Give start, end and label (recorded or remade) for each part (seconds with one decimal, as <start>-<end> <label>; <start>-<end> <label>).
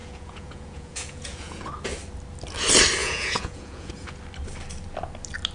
0.0-1.7 remade; 1.7-3.0 recorded; 3.0-4.2 remade; 4.2-5.5 recorded